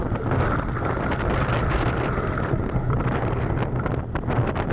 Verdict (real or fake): real